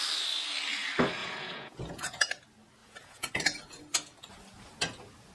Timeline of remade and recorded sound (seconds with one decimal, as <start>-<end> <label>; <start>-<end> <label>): 0.0-1.2 recorded; 1.2-2.3 remade; 2.3-2.8 recorded; 2.8-3.3 remade; 3.3-5.3 recorded